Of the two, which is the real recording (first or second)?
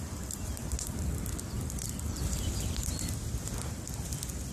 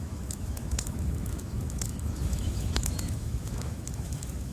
first